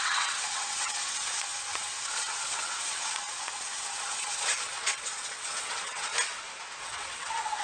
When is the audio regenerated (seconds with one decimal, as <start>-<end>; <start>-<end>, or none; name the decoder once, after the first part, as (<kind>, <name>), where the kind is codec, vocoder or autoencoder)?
0.0-6.1 (vocoder, WaveNeXt); 6.8-7.6